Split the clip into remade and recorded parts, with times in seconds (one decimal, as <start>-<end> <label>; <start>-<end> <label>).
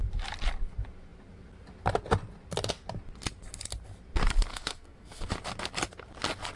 0.0-4.5 recorded; 4.5-5.3 remade; 5.3-6.6 recorded